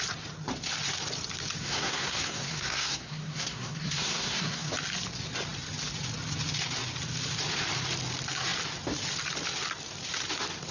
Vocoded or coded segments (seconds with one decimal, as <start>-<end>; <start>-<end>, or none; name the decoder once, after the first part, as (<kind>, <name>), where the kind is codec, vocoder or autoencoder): 1.6-4.7 (codec, SNAC)